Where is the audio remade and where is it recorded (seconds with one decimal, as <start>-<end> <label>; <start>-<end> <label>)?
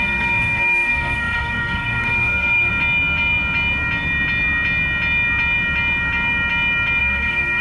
0.0-2.7 remade; 2.7-7.0 recorded; 7.0-7.6 remade